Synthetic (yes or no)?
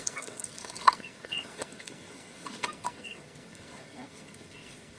yes